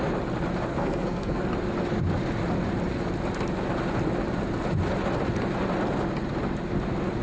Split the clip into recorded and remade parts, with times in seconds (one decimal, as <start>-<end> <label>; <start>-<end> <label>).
0.0-0.7 recorded; 0.7-1.4 remade; 1.4-7.2 recorded